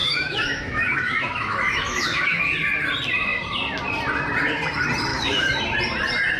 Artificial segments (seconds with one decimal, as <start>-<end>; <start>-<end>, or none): 0.0-2.4; 5.1-5.6